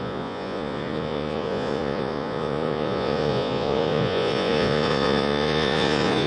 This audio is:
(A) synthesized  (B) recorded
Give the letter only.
A